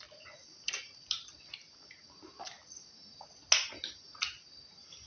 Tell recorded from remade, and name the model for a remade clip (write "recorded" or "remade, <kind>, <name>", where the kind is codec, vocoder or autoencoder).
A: recorded